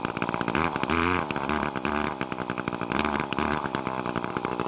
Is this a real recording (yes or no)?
yes